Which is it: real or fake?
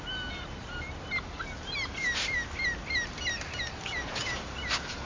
real